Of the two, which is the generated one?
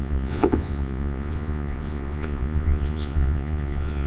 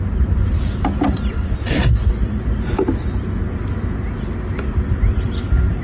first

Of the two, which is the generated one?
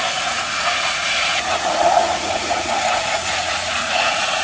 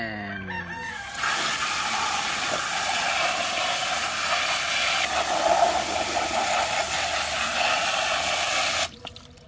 first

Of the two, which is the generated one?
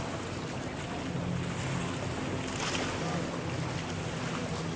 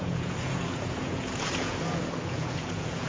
second